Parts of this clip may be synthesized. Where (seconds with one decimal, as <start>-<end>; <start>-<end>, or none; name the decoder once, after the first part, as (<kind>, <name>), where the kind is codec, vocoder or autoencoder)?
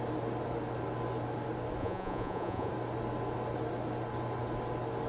1.8-2.7 (vocoder, Vocos)